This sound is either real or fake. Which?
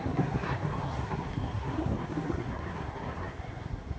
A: fake